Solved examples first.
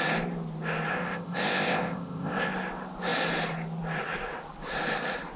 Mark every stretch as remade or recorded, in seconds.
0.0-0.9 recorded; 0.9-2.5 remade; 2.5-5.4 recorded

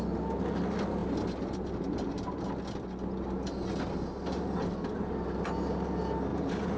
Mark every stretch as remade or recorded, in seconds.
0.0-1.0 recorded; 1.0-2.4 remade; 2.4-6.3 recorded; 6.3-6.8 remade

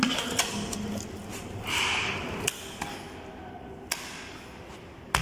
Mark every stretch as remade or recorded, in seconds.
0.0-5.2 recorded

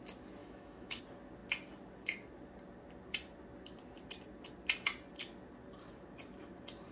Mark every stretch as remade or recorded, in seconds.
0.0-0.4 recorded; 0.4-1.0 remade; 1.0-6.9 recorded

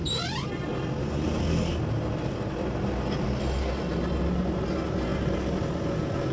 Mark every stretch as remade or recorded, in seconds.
0.0-6.3 recorded

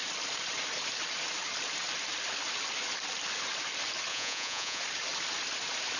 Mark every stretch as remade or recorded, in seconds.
0.0-4.1 recorded; 4.1-4.8 remade; 4.8-6.0 recorded